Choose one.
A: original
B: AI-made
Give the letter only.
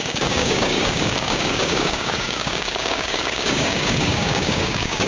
B